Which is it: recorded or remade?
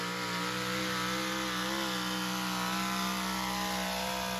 recorded